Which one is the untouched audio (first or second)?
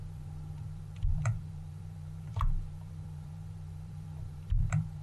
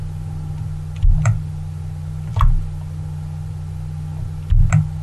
second